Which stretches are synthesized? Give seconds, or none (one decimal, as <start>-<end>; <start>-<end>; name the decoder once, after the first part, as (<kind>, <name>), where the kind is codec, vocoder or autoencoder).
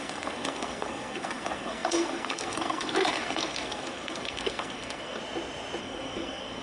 0.0-5.2 (codec, SNAC); 5.8-6.6